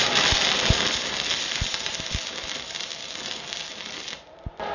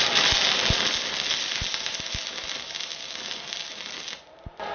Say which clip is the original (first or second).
second